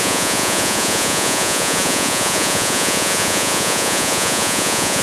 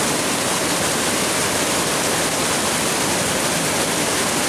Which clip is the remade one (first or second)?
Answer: first